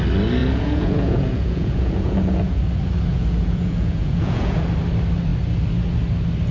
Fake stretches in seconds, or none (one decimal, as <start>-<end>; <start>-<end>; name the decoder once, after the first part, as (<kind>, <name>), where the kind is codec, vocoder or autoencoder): 0.4-2.6 (vocoder, Vocos); 3.1-4.6